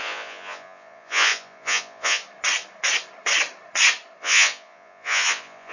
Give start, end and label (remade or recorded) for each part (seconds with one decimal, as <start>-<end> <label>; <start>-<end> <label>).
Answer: 0.0-2.2 remade; 2.2-4.2 recorded; 4.2-5.7 remade